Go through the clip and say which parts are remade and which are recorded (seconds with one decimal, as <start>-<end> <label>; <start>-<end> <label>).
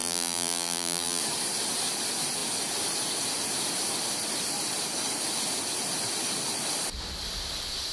0.0-1.2 remade; 1.2-7.9 recorded